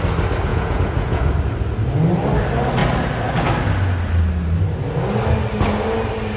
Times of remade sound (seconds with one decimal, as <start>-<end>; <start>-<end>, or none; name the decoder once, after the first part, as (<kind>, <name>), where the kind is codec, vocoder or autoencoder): 0.5-1.2 (vocoder, Vocos)